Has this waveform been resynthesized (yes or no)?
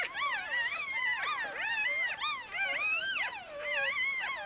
no